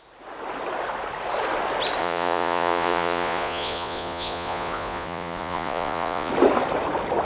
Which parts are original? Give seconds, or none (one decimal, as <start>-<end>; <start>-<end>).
0.0-2.0; 6.3-7.2